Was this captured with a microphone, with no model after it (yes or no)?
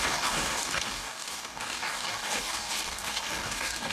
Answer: no